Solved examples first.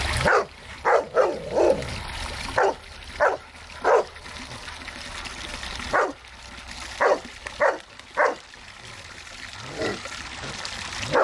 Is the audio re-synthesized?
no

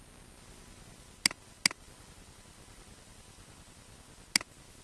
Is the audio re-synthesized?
no